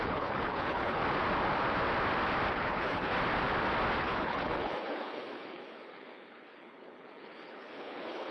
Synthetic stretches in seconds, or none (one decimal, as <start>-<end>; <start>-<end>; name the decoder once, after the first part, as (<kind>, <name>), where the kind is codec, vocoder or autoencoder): 0.0-1.0 (codec, HILCodec); 2.5-3.1; 4.0-8.3